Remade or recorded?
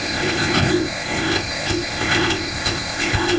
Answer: remade